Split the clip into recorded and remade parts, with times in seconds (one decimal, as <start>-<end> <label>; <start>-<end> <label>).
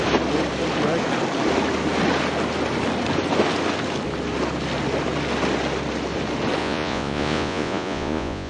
0.0-6.6 recorded; 6.6-8.5 remade